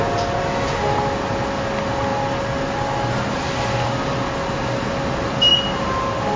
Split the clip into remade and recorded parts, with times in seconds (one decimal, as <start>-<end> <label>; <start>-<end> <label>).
0.0-6.4 recorded